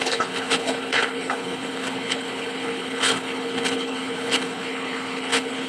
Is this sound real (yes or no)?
no